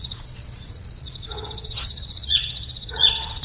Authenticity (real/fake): fake